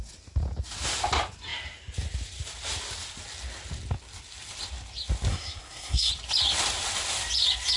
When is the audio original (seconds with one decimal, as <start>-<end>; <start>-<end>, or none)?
0.0-5.3; 6.1-7.8